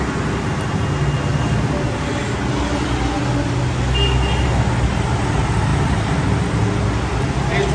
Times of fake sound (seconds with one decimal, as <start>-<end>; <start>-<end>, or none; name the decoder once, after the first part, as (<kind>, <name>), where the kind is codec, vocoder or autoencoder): 5.7-6.4 (vocoder, BigVGAN v2)